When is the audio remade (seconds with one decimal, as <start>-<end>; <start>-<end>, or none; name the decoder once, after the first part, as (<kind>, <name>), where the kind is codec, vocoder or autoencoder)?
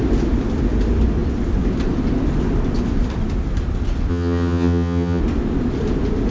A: 4.1-5.2 (vocoder, HiFi-GAN)